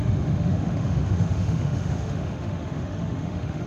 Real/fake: fake